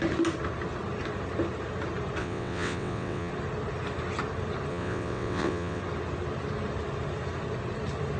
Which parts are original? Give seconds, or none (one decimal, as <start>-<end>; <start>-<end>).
0.0-2.2; 3.3-4.7; 5.8-8.2